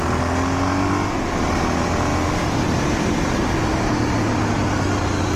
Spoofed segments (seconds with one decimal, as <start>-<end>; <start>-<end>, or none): none